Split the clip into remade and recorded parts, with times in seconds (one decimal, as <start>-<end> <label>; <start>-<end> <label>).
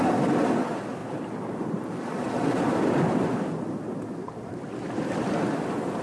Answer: 0.0-6.0 recorded